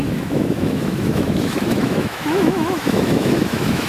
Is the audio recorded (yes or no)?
no